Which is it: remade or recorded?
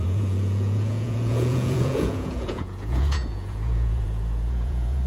remade